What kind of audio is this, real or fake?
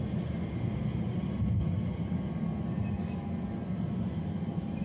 real